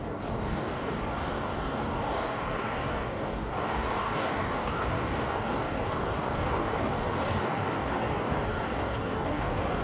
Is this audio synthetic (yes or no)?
yes